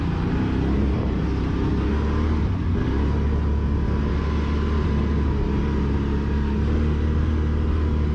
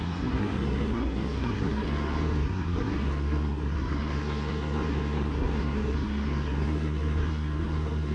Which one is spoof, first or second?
second